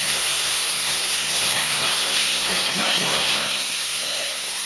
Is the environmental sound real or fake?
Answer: fake